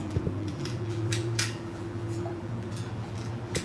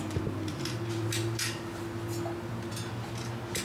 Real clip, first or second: second